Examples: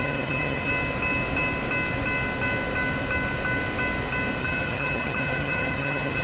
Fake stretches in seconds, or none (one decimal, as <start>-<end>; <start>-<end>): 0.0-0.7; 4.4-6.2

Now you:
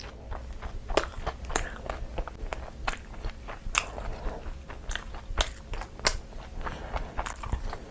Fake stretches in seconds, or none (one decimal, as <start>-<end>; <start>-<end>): none

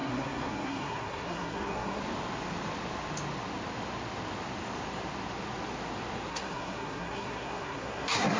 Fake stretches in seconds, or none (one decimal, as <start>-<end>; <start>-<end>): 0.0-2.0; 6.3-8.4